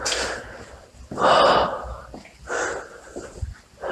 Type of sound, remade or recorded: recorded